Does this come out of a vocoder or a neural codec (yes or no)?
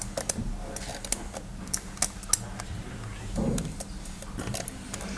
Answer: no